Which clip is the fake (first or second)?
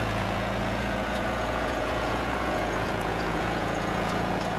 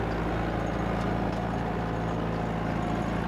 first